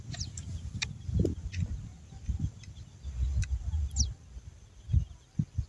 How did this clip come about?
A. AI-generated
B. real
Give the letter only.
B